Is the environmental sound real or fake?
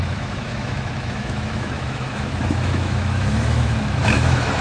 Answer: fake